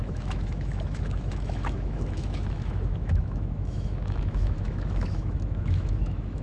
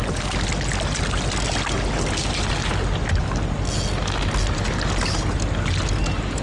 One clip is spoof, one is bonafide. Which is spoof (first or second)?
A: first